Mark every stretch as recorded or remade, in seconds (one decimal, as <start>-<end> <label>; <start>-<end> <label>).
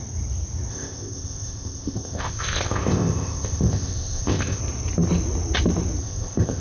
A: 0.0-0.7 recorded; 0.7-4.6 remade; 4.6-6.0 recorded; 6.0-6.6 remade